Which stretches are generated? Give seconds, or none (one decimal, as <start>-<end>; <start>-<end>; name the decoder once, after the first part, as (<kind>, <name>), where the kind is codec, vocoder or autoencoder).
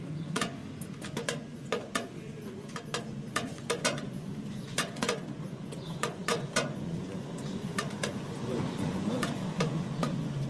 0.0-0.6 (vocoder, Vocos); 1.1-10.5